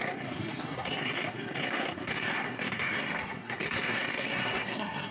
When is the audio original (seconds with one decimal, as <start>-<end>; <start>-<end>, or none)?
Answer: none